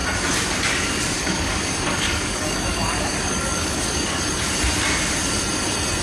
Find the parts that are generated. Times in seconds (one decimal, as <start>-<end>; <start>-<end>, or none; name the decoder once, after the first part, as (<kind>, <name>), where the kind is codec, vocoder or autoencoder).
1.2-4.2 (codec, DAC)